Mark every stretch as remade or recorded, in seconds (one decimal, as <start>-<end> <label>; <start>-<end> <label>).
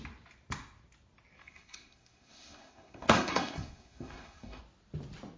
0.0-1.4 recorded; 1.4-4.6 remade; 4.6-5.4 recorded